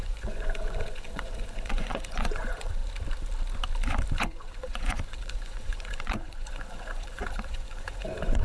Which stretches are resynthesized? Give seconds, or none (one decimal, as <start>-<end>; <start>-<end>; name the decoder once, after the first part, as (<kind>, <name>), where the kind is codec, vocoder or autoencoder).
0.0-2.8 (vocoder, Vocos); 4.2-8.4